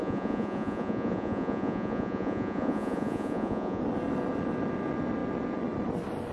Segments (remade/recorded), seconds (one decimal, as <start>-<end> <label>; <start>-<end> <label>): 0.0-3.8 remade; 3.8-6.3 recorded